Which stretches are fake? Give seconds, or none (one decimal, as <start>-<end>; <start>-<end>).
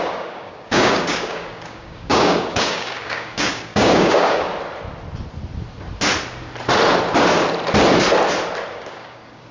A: 0.0-4.5; 8.7-9.5